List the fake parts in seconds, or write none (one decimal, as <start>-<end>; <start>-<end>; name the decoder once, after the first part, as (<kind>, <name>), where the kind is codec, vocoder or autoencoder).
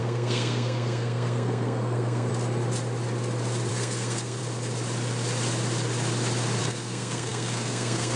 0.0-2.3 (codec, SNAC); 3.7-4.4; 6.6-8.2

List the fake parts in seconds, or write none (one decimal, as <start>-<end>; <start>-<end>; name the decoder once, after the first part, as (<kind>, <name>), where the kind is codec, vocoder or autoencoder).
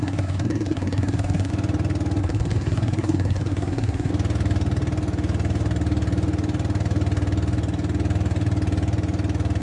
0.0-1.5 (codec, SNAC); 2.2-4.1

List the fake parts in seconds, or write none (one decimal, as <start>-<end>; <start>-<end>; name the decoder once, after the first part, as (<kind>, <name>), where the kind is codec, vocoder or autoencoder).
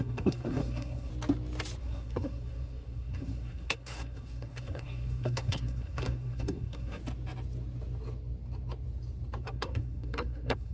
0.0-1.1 (codec, SNAC); 1.8-7.0; 9.4-10.7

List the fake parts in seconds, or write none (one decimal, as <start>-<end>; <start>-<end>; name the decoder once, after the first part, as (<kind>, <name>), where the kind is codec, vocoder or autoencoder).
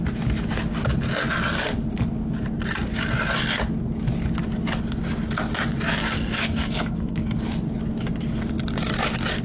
6.0-7.4 (codec, SNAC)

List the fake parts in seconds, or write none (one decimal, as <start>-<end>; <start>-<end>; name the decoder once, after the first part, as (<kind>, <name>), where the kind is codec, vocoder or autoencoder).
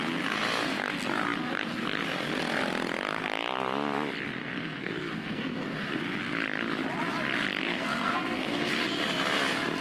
4.4-6.0 (codec, SNAC); 7.6-8.7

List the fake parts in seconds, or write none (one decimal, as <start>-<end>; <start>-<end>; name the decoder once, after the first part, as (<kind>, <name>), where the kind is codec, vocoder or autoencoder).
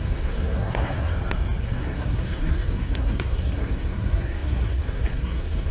0.0-1.1 (codec, SNAC); 1.6-5.7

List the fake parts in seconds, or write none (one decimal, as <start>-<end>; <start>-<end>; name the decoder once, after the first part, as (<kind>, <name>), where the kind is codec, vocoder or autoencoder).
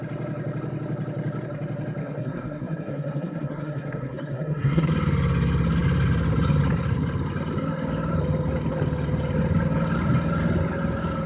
2.0-4.9 (codec, SNAC)